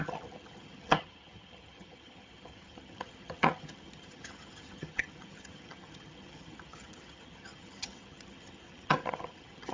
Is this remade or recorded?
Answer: remade